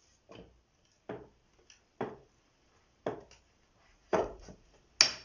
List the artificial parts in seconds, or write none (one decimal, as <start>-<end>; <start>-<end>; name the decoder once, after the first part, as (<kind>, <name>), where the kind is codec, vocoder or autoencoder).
3.9-4.8 (vocoder, Vocos)